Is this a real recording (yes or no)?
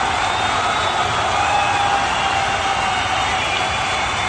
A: yes